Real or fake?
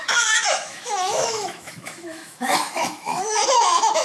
fake